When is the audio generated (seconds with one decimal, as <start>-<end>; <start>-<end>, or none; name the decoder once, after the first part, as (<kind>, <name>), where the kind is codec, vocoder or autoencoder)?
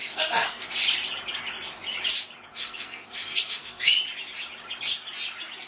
0.0-0.7 (codec, SNAC); 2.5-3.9